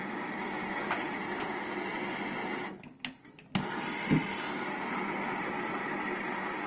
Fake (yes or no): no